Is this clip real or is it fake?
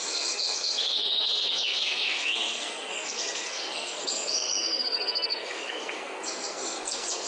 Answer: fake